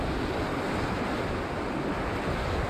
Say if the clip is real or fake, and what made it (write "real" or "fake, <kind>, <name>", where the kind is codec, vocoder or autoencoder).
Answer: real